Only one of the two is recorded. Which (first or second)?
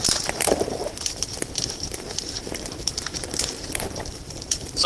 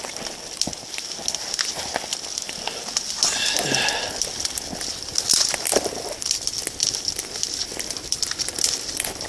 second